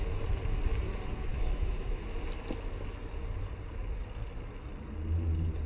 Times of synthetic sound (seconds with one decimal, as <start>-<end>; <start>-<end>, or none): 1.3-2.0